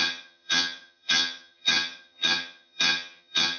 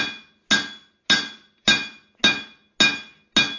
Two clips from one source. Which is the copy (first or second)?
first